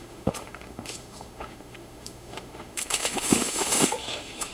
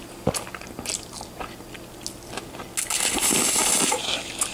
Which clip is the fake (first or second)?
first